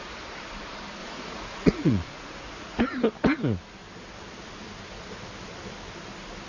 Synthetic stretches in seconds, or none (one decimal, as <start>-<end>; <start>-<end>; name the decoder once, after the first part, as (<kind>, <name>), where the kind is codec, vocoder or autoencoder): 1.0-2.8 (vocoder, Vocos)

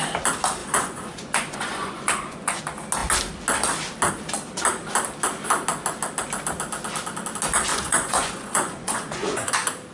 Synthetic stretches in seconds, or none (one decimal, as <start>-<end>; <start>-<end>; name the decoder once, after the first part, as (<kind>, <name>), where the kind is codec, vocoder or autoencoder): 0.6-2.6 (vocoder, Vocos); 7.7-9.5

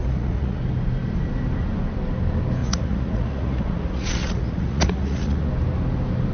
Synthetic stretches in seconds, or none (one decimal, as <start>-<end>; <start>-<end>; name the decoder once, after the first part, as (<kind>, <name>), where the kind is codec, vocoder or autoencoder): 0.0-0.6 (vocoder, Vocos); 2.6-5.5

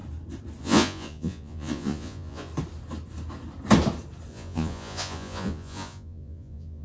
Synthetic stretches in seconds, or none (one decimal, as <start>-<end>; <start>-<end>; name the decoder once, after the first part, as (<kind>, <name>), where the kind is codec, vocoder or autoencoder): 0.6-2.5 (vocoder, Vocos); 4.3-6.8

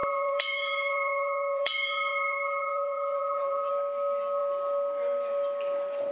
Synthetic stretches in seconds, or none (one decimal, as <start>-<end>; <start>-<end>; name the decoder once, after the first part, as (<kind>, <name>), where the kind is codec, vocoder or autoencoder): 0.0-3.7 (vocoder, Vocos)